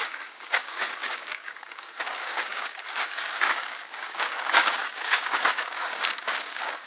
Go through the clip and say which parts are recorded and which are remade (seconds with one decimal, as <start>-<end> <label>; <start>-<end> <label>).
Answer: 0.0-6.9 remade